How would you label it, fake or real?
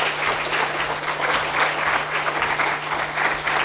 real